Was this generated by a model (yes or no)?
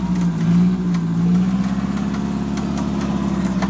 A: no